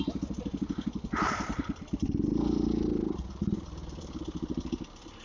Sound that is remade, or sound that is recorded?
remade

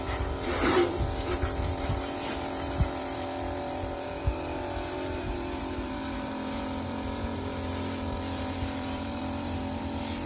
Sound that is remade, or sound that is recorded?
remade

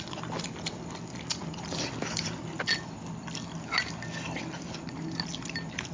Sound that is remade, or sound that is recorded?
recorded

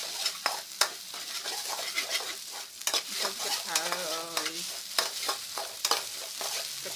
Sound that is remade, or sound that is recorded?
recorded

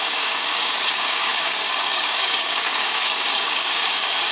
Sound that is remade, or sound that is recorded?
remade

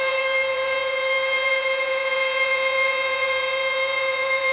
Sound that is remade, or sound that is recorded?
remade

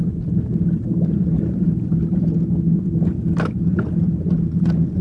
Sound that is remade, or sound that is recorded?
recorded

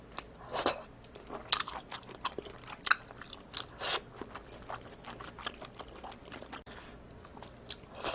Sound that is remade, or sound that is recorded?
recorded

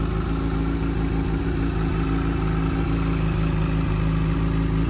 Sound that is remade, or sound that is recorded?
recorded